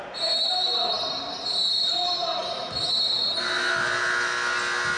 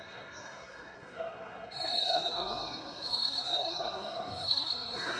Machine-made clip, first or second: second